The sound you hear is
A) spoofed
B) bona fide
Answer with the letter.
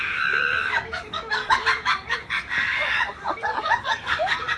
A